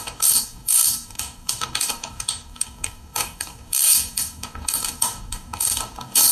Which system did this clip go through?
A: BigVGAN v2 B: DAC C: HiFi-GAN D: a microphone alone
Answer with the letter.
B